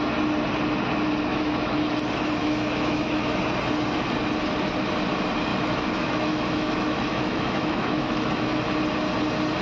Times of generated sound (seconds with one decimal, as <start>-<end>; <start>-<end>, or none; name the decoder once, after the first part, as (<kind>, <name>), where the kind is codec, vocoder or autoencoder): 1.3-1.9 (autoencoder, DAC-VAE); 2.4-3.4; 5.5-8.6